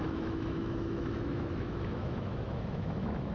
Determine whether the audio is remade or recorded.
remade